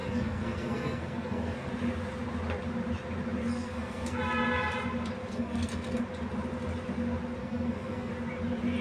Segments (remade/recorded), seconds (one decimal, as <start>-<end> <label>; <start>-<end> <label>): 0.0-1.7 remade; 1.7-3.4 recorded; 3.4-4.2 remade; 4.2-5.3 recorded; 5.3-6.0 remade; 6.0-7.4 recorded; 7.4-8.1 remade; 8.1-8.8 recorded